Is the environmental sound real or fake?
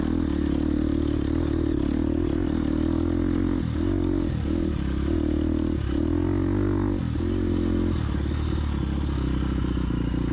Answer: real